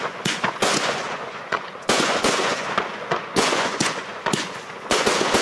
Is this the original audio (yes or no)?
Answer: no